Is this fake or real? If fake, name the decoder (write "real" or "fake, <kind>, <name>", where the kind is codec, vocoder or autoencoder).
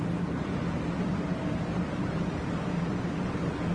real